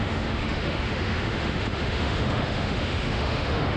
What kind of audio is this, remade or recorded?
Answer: remade